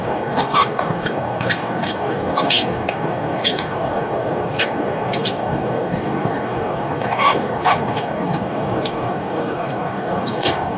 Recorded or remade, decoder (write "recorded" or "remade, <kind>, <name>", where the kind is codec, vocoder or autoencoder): remade, codec, DAC